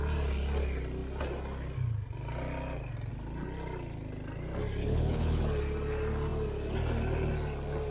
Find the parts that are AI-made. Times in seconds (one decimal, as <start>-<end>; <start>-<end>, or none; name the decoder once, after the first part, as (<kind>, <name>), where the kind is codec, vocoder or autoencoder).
4.8-5.4 (codec, HILCodec)